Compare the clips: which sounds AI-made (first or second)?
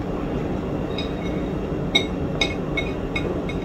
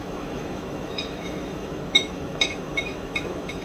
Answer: second